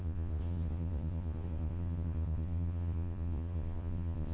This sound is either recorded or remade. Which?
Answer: remade